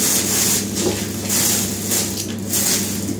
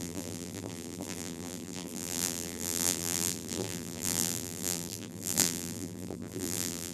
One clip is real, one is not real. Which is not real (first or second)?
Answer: second